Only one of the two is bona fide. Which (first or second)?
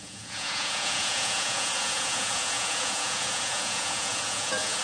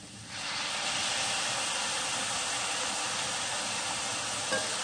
second